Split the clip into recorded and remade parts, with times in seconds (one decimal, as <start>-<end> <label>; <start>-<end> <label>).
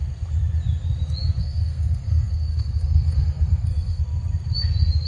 0.0-1.4 recorded; 1.4-4.0 remade; 4.0-5.1 recorded